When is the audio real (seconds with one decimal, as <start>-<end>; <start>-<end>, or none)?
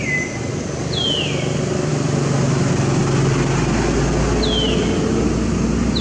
0.0-6.0